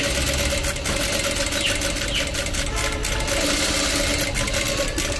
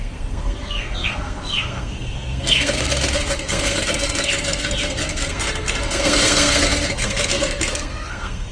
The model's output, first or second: second